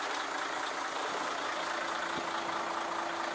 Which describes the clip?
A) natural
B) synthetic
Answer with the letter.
A